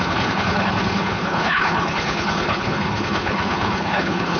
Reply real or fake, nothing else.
fake